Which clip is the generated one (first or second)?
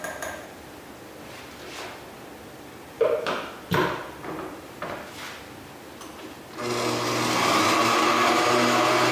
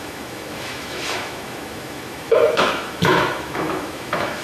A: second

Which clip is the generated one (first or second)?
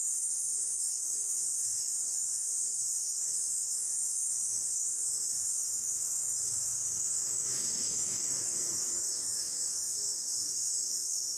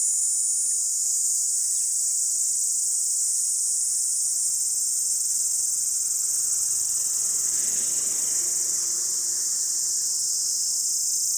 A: first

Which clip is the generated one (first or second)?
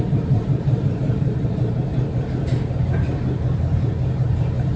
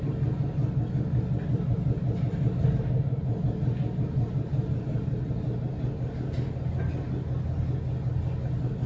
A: first